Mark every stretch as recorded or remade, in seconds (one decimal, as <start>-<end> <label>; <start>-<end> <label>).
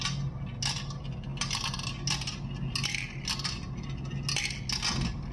0.0-5.3 recorded